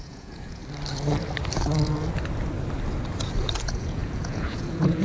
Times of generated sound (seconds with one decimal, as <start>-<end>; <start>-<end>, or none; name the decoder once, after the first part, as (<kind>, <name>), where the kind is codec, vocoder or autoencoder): 0.0-0.6 (vocoder, Vocos); 3.6-5.0